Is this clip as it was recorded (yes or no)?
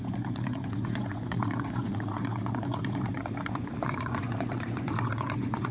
no